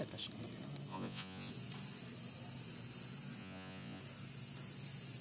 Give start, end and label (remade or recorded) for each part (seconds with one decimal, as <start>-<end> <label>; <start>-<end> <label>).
0.0-0.9 recorded; 0.9-1.5 remade; 1.5-3.4 recorded; 3.4-4.0 remade; 4.0-5.2 recorded